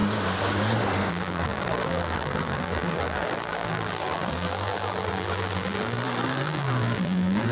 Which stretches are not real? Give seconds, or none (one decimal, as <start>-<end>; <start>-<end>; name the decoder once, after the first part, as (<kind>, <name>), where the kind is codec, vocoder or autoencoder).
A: 1.1-7.5 (vocoder, BigVGAN v2)